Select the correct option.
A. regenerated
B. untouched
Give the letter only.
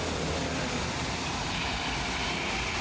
B